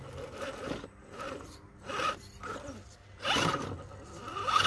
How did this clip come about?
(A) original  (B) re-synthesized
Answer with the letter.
A